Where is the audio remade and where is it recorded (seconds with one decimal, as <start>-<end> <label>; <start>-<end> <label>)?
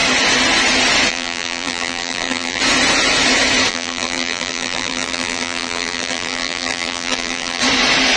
0.0-1.1 recorded; 1.1-2.6 remade; 2.6-3.7 recorded; 3.7-7.6 remade; 7.6-8.2 recorded